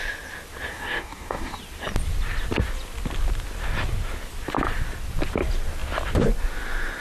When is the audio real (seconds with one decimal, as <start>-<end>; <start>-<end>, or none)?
0.0-0.7; 1.6-7.0